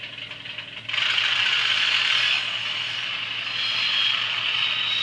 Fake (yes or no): no